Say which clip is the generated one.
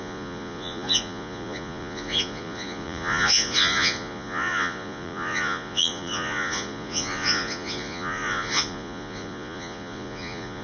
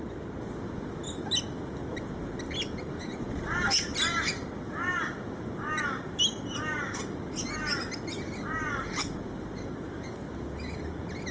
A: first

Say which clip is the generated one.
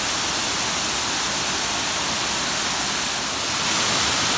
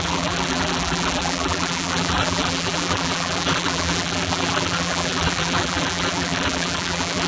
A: second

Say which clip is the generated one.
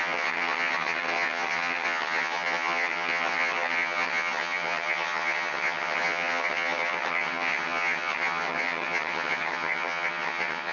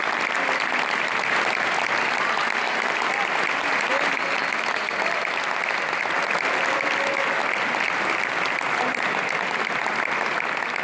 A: first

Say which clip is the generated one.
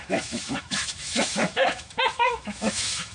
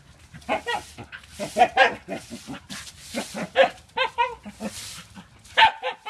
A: first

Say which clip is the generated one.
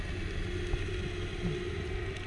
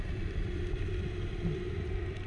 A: second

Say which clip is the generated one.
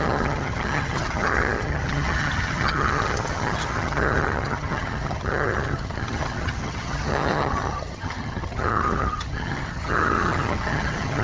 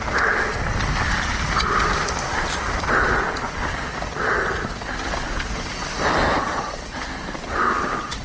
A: first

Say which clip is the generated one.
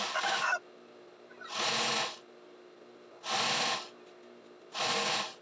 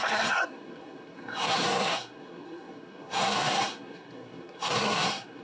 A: second